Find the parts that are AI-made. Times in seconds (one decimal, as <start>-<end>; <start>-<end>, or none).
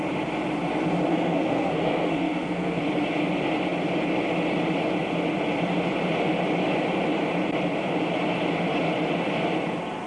1.1-2.8